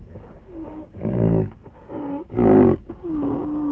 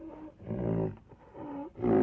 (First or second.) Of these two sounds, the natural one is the second